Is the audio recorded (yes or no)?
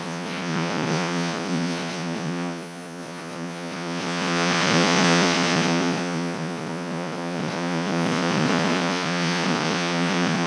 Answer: no